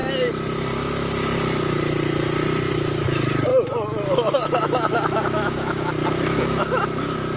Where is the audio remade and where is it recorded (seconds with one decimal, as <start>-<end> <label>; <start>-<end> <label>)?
0.0-3.5 recorded; 3.5-5.9 remade; 5.9-7.4 recorded